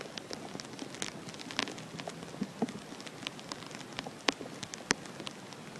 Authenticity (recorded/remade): recorded